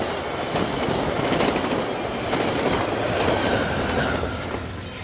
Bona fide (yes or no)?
yes